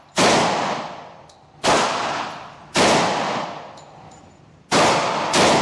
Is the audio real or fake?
real